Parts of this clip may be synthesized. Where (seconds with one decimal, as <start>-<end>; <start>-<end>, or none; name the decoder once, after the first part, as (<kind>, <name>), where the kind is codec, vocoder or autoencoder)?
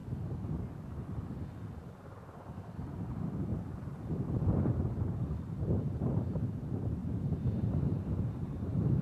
1.8-9.0 (vocoder, BigVGAN v2)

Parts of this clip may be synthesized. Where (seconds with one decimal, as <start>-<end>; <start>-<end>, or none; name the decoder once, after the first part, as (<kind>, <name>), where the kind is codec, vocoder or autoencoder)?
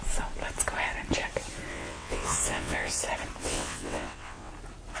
1.7-3.0 (vocoder, WaveNeXt); 3.4-4.5